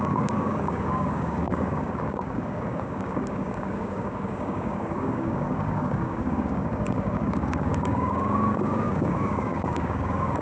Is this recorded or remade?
remade